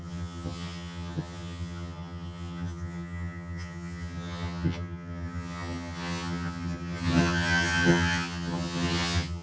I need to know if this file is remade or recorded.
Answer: remade